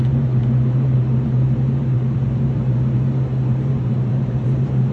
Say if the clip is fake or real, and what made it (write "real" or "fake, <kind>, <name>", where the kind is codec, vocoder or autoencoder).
fake, vocoder, BigVGAN v2